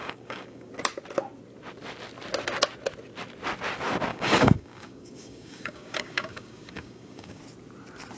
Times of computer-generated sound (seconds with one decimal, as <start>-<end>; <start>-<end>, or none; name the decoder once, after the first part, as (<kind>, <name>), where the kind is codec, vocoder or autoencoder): 0.0-0.7 (codec, DAC); 4.1-7.4